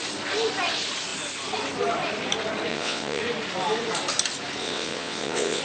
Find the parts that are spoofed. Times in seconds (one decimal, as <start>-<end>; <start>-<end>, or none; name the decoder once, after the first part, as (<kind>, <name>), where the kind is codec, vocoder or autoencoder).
2.7-3.2 (vocoder, WaveNeXt); 4.6-5.6